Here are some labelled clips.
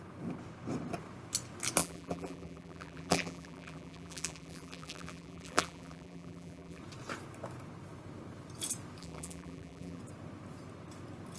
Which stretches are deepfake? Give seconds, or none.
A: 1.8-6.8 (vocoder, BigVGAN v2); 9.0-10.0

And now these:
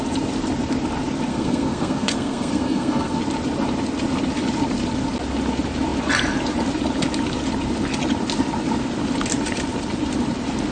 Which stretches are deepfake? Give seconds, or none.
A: 1.3-3.2 (codec, SNAC)

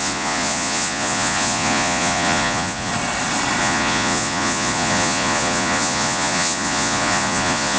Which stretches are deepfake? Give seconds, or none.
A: 0.0-2.9 (vocoder, Vocos); 3.6-7.8

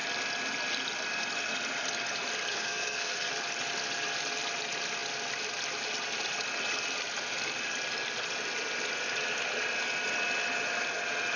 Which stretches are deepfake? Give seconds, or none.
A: 2.5-3.3 (codec, SNAC)

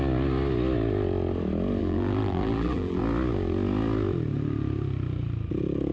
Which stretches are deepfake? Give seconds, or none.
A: 1.8-3.0 (vocoder, BigVGAN v2)

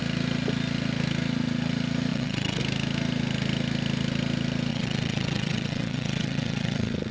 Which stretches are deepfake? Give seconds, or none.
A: 2.1-2.6 (vocoder, WaveNeXt); 4.7-7.1

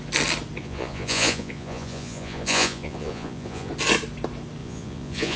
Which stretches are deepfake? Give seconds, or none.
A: 0.6-3.7 (vocoder, Vocos); 4.6-5.4